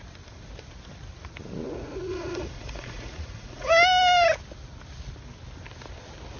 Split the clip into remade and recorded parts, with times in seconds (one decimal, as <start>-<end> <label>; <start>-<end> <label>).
0.0-2.1 recorded; 2.1-3.7 remade; 3.7-6.4 recorded